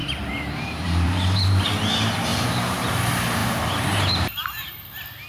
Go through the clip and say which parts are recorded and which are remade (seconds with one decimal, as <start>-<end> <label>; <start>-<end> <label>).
0.0-1.7 remade; 1.7-2.3 recorded; 2.3-2.9 remade; 2.9-3.4 recorded; 3.4-4.7 remade; 4.7-5.3 recorded